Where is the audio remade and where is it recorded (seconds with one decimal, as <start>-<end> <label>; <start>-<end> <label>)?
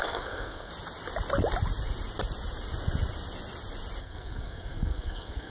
0.0-0.7 remade; 0.7-4.0 recorded; 4.0-5.5 remade